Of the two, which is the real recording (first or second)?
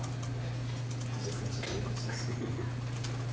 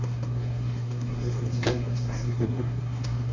first